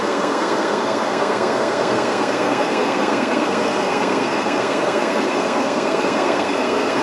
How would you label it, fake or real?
fake